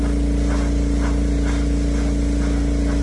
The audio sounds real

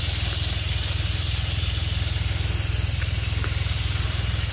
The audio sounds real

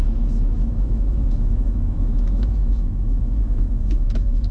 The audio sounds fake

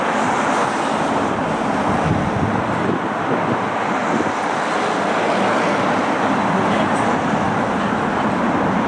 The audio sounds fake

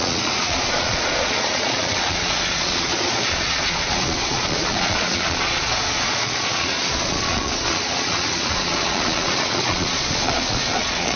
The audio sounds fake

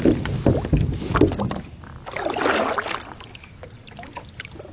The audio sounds real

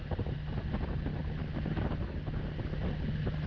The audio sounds real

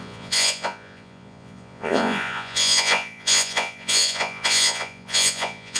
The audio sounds fake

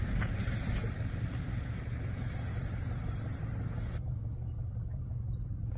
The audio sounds fake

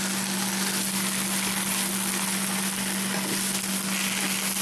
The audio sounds real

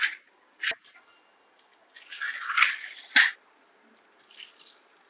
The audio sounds real